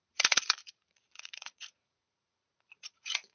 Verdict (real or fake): fake